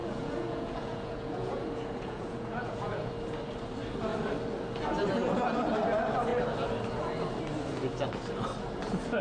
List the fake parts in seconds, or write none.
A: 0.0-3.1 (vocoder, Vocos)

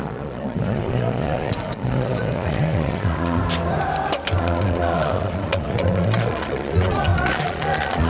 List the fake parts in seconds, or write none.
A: 0.0-3.4 (vocoder, Vocos); 4.4-8.1

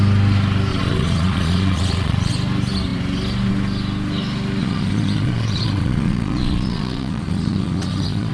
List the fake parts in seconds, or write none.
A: 0.7-2.3 (vocoder, Vocos); 4.6-8.3

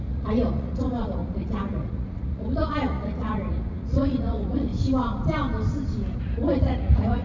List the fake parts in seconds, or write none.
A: 0.0-4.7 (vocoder, Vocos); 6.2-7.2

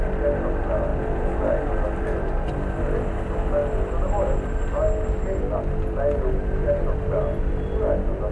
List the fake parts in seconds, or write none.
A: none

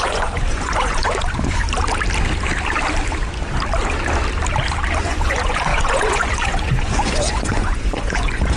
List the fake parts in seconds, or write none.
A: 0.0-1.6 (vocoder, Vocos); 5.0-8.6